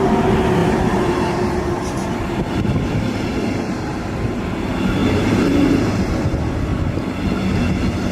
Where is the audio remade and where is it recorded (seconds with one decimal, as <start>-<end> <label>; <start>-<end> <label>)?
0.0-0.6 recorded; 0.6-4.4 remade; 4.4-5.0 recorded; 5.0-6.1 remade; 6.1-8.1 recorded